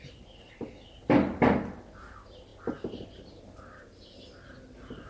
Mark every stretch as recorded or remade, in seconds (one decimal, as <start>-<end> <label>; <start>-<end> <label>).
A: 0.0-5.1 recorded